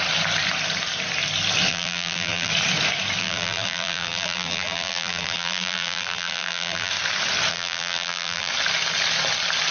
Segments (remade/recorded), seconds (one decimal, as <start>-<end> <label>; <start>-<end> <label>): 0.0-1.7 recorded; 1.7-2.5 remade; 2.5-3.2 recorded; 3.2-6.9 remade; 6.9-7.5 recorded; 7.5-8.5 remade; 8.5-9.7 recorded